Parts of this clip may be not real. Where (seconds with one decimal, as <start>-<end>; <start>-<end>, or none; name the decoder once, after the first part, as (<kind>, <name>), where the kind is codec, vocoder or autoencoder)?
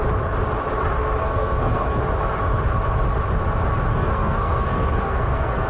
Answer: 1.2-2.0 (codec, SNAC); 3.9-5.7